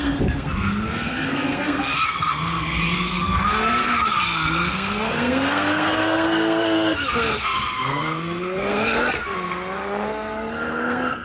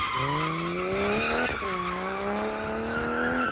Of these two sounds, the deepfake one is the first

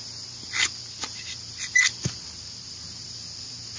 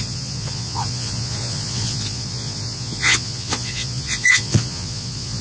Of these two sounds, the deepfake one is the second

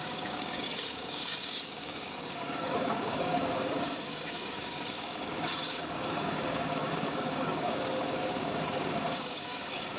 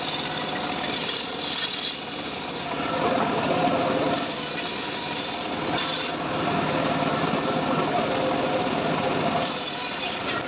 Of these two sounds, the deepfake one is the first